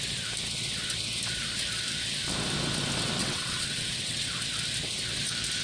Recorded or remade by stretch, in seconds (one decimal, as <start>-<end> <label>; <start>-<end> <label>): 0.0-3.2 recorded; 3.2-4.3 remade; 4.3-5.6 recorded